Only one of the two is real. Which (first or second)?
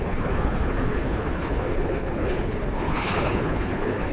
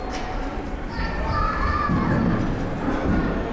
second